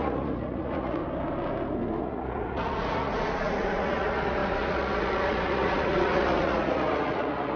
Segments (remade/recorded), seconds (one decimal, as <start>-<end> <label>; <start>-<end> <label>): 0.0-1.0 remade; 1.0-2.0 recorded; 2.0-7.6 remade